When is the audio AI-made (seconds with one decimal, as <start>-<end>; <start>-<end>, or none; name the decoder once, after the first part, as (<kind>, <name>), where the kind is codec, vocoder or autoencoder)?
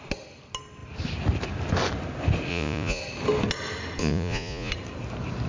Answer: 2.5-3.0 (vocoder, Vocos); 4.0-4.7